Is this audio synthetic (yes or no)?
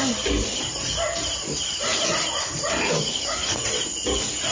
no